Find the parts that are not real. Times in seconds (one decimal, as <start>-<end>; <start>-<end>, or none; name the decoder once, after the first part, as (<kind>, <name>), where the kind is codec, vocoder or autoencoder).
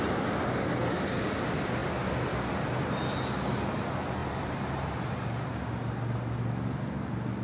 none